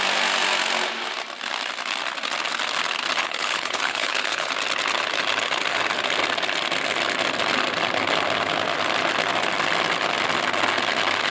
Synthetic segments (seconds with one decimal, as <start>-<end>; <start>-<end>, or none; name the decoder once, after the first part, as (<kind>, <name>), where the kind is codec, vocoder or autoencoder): 3.2-4.5 (codec, HILCodec)